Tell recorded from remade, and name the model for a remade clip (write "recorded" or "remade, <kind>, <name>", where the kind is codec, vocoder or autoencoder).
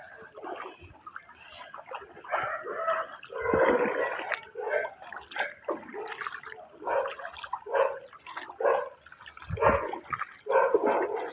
recorded